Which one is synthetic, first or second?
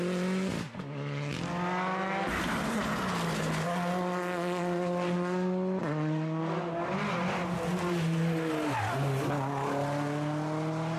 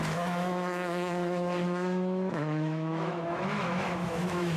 second